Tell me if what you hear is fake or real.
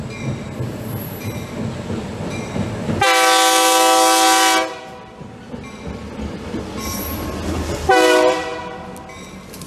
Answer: real